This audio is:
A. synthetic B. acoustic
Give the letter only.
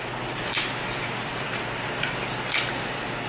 B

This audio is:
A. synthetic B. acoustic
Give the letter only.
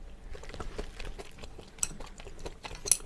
B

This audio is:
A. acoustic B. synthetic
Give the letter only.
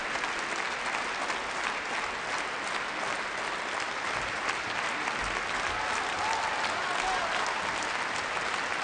A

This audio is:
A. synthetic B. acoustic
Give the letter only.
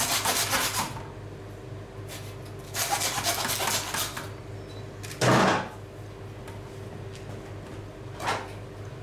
B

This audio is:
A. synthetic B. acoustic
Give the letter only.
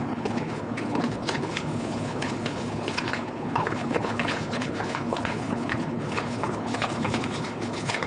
A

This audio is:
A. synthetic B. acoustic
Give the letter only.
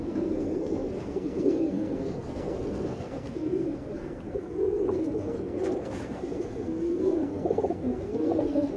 A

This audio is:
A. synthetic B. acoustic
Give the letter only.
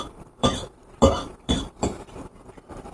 A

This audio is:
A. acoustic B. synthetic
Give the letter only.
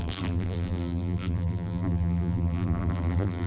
B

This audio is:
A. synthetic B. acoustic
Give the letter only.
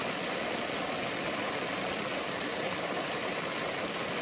B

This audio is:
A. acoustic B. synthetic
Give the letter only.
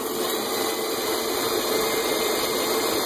A